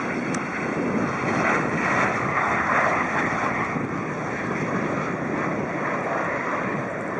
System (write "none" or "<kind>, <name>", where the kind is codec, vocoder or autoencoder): none